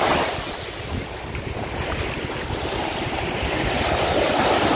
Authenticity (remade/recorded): recorded